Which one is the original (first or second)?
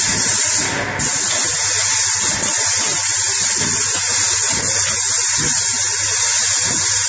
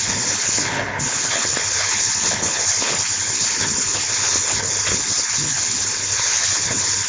first